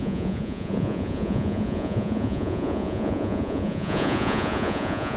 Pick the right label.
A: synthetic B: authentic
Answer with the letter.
A